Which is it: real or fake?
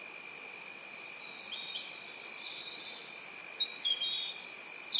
real